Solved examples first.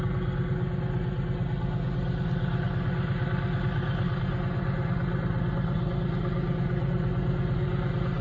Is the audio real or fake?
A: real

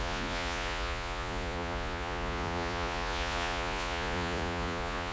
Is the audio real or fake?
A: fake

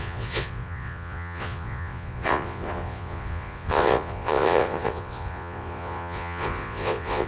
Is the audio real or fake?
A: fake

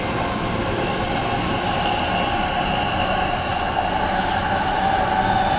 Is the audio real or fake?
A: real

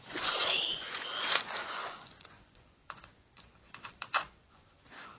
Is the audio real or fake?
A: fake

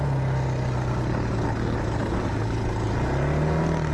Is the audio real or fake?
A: real